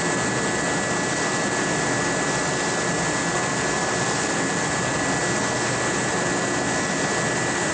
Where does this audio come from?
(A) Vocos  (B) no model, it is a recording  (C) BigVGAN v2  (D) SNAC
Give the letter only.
B